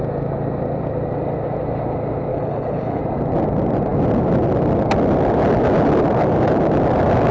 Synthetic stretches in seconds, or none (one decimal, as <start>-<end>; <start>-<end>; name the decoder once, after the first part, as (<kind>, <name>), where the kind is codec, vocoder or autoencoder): 2.3-3.0 (codec, HILCodec)